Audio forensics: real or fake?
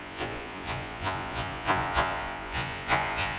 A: fake